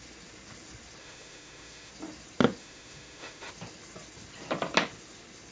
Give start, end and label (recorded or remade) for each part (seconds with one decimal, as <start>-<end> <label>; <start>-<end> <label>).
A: 0.0-1.0 recorded; 1.0-1.9 remade; 1.9-2.6 recorded; 2.6-3.5 remade; 3.5-5.5 recorded